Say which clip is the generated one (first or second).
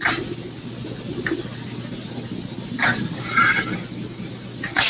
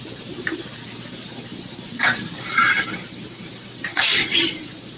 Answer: second